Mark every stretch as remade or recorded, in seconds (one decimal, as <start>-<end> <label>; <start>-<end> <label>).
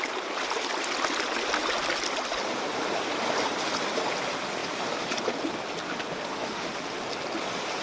0.0-6.3 recorded; 6.3-7.0 remade; 7.0-7.8 recorded